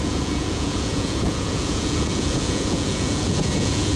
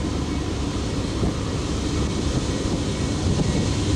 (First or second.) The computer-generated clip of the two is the first